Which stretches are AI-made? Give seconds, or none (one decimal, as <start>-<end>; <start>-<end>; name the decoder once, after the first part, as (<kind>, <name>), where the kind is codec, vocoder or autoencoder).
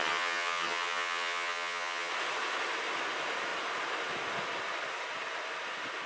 0.0-2.1 (vocoder, HiFi-GAN)